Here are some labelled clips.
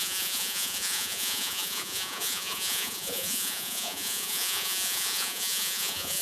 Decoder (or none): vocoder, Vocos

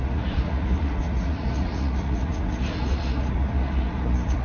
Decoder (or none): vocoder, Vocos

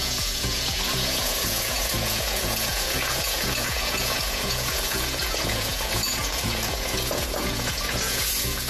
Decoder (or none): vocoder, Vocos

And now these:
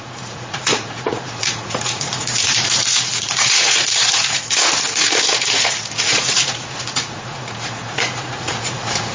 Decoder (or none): vocoder, Vocos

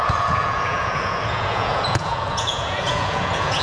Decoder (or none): vocoder, Vocos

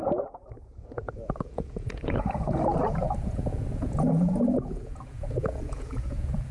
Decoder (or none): vocoder, Vocos